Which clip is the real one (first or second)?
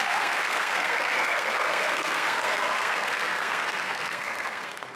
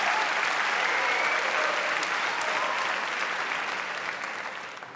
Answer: second